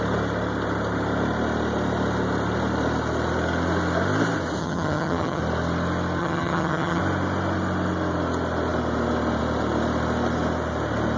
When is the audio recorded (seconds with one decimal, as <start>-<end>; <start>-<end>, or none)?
0.0-4.6; 5.4-6.2; 7.0-11.2